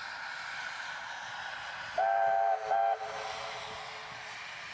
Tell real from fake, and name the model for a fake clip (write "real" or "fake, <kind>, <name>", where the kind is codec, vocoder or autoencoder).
real